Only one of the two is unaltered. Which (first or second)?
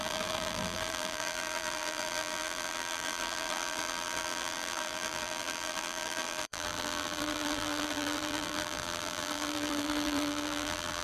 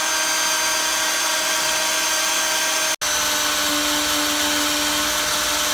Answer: second